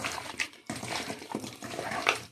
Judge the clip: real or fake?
fake